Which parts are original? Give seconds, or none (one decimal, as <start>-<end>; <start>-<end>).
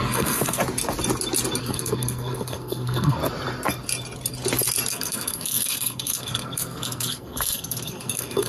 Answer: 0.6-1.6; 3.2-4.9